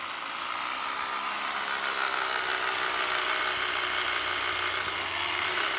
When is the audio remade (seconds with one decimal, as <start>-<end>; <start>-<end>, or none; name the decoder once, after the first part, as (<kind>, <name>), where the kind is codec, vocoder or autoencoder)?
none